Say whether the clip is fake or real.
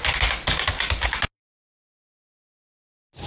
real